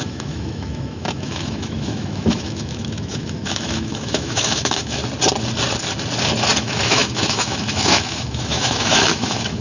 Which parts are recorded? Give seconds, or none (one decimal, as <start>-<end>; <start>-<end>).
5.0-6.6